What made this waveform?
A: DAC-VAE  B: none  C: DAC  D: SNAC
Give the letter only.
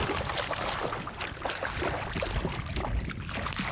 B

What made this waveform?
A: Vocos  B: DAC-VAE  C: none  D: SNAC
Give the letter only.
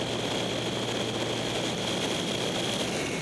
C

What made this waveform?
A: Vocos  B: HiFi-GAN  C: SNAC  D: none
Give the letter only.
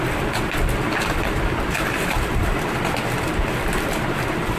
D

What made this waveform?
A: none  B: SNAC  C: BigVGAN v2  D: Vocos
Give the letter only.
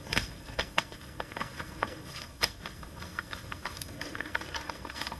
B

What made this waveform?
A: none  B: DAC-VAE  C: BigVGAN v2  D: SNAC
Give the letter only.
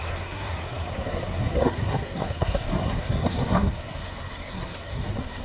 D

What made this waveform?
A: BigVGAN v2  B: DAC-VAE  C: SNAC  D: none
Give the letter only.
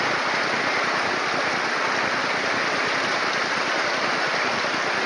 D